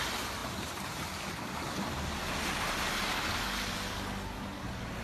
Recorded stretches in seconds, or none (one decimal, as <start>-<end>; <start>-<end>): 0.0-5.0